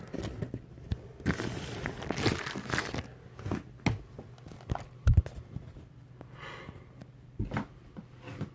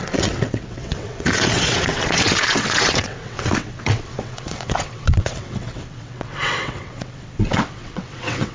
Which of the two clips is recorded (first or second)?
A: first